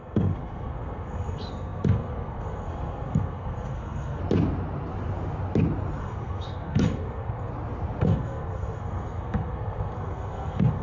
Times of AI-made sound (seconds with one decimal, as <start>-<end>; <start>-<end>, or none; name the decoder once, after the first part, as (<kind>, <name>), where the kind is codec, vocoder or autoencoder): 0.0-4.2 (codec, SNAC); 6.0-7.5; 8.0-10.8